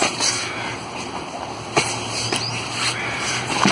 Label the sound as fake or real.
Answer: real